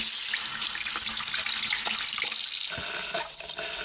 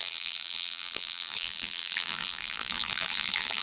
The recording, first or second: first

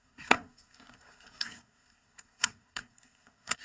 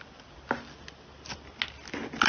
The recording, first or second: second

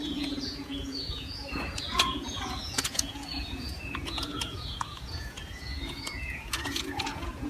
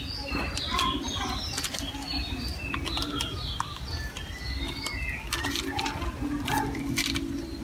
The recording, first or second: second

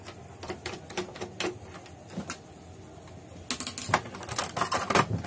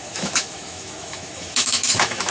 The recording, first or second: first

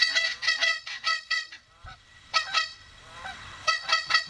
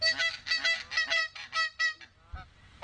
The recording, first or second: second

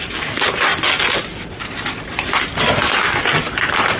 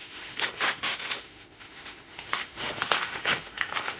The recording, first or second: first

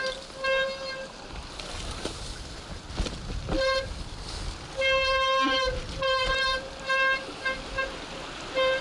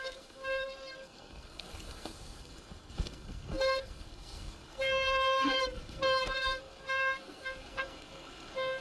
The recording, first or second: first